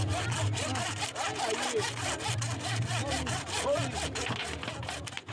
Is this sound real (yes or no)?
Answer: yes